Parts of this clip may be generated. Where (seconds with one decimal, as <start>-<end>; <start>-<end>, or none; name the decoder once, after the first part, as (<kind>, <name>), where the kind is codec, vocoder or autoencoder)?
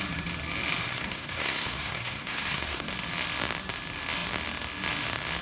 0.9-2.9 (codec, SNAC)